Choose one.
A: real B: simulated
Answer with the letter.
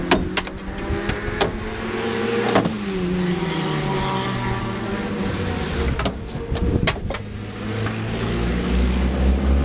A